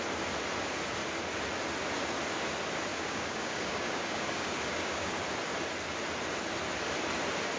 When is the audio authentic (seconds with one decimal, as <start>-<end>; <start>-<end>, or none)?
0.0-2.9; 5.1-7.6